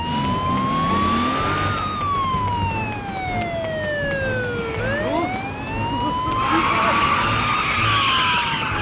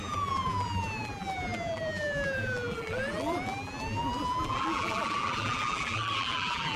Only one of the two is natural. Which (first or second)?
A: first